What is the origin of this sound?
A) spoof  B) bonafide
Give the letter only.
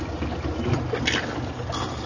B